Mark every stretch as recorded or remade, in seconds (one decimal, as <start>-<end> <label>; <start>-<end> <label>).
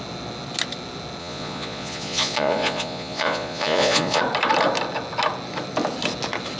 0.0-1.2 recorded; 1.2-4.2 remade; 4.2-6.6 recorded